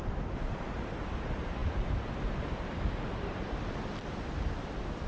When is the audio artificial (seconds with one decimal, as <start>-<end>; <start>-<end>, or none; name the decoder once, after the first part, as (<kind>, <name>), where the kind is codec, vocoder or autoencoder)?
none